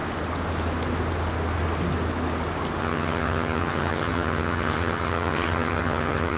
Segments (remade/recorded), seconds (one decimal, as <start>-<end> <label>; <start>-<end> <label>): 0.0-2.8 recorded; 2.8-6.4 remade